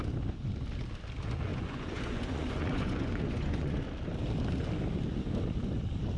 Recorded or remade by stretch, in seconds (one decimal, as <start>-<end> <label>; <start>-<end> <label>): 0.0-1.5 recorded; 1.5-3.8 remade; 3.8-6.2 recorded